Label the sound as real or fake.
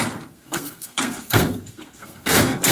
fake